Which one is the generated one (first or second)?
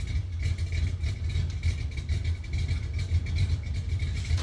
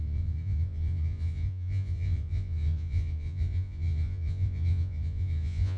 second